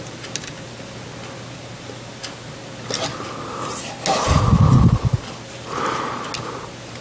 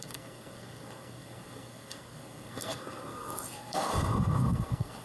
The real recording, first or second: first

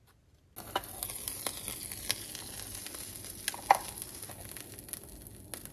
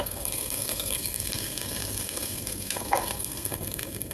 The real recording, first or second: first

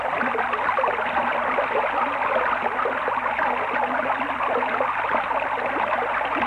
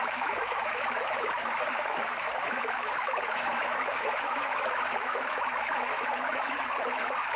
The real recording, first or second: first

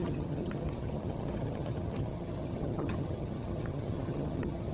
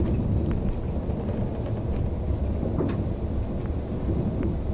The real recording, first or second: second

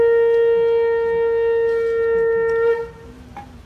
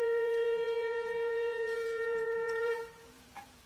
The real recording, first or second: first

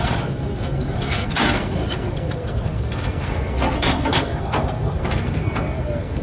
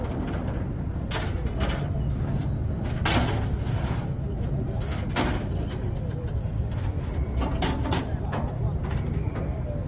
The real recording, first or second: second